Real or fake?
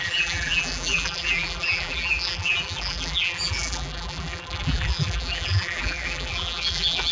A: fake